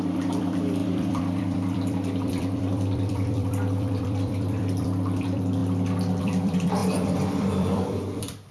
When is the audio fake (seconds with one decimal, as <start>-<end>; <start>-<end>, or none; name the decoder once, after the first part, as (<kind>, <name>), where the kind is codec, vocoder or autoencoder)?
0.0-5.6 (vocoder, BigVGAN v2); 6.2-8.5